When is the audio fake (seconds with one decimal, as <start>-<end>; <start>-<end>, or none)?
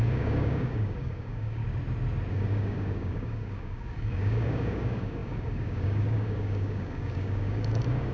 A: 0.0-1.6; 2.3-8.1